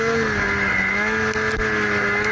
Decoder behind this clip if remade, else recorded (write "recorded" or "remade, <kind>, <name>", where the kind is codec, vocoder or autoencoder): recorded